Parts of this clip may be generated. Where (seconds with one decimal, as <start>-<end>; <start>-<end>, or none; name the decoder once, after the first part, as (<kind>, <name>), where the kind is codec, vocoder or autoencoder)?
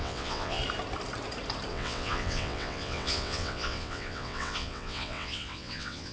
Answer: 0.0-0.6 (vocoder, WaveNeXt); 1.7-6.1